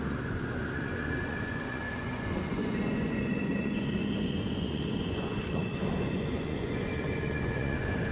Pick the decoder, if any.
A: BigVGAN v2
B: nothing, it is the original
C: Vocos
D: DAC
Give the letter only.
C